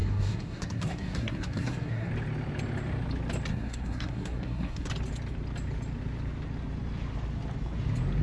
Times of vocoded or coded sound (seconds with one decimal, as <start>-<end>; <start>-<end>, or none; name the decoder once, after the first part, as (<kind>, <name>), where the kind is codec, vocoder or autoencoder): 0.0-2.1 (codec, SNAC); 3.5-4.9